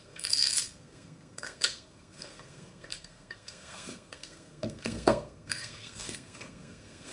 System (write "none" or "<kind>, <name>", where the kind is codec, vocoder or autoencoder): codec, SNAC